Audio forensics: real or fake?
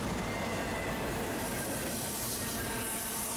real